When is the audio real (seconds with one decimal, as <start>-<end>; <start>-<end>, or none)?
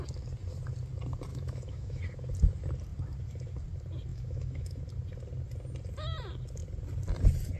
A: 0.0-1.3; 2.0-4.1; 4.8-7.6